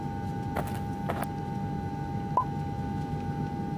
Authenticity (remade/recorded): recorded